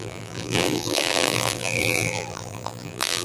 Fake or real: fake